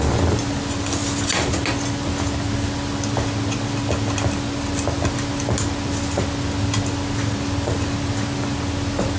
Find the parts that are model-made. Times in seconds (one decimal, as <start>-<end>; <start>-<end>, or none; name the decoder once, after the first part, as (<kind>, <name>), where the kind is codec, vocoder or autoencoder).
none